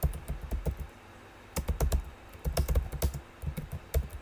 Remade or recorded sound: recorded